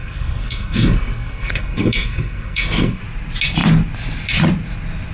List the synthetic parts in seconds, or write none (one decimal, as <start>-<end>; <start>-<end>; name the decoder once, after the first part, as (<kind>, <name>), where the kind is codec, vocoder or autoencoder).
0.0-3.0 (codec, SNAC)

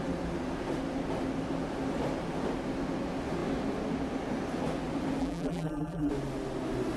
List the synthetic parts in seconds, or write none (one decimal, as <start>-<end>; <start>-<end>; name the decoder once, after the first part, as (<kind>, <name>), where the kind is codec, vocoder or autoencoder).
5.2-6.1 (vocoder, BigVGAN v2)

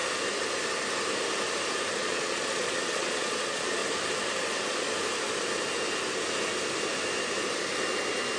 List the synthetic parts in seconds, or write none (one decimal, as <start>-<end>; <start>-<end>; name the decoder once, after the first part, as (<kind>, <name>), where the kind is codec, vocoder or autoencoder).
1.9-3.8 (vocoder, Vocos)

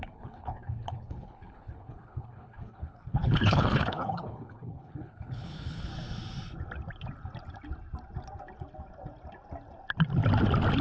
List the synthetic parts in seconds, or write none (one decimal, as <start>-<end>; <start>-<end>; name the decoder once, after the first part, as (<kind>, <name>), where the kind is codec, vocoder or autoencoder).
0.0-5.9 (codec, HILCodec)

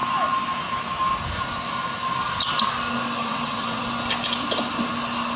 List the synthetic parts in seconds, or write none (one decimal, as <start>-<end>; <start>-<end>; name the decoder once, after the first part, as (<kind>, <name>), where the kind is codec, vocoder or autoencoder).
3.2-3.8 (vocoder, WaveNeXt)

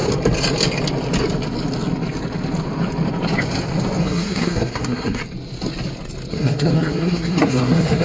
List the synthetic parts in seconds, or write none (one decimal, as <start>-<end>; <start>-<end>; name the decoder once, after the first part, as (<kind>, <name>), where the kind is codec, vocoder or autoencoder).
4.0-5.2 (codec, SNAC); 6.3-8.0

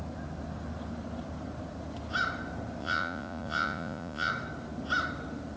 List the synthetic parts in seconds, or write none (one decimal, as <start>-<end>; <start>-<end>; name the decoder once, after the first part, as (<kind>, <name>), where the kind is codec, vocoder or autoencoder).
2.8-4.3 (vocoder, Vocos)